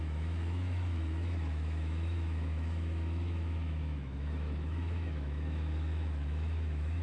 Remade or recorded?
remade